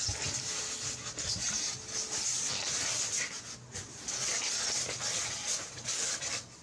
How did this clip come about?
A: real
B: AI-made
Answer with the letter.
A